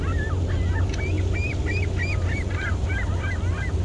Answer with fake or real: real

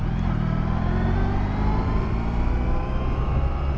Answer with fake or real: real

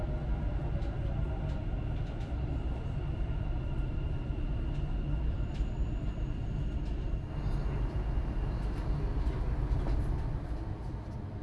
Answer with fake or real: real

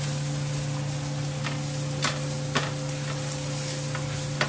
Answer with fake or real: real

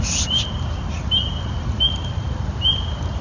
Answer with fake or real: real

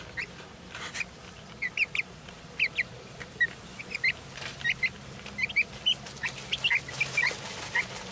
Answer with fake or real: real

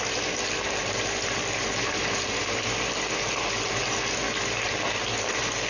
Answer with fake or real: real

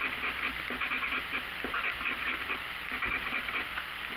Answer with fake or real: real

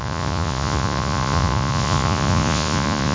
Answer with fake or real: fake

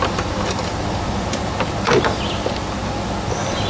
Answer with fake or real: real